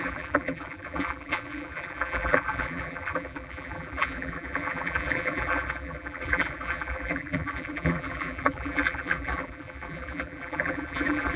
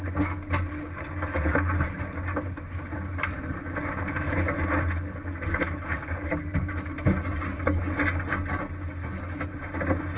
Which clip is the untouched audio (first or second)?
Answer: second